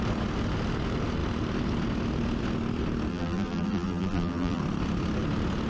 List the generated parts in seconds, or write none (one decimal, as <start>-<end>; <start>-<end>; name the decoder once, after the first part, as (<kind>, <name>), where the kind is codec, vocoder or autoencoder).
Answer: 3.1-4.6 (vocoder, BigVGAN v2)